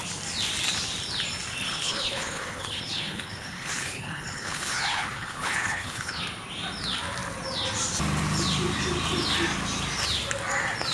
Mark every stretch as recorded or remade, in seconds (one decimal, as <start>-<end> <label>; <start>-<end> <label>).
0.0-1.7 recorded; 1.7-6.2 remade; 6.2-10.9 recorded